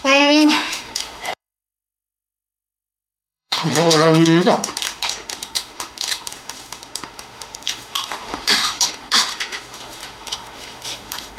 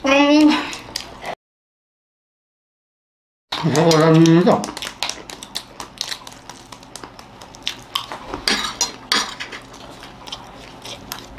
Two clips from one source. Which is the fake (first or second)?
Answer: first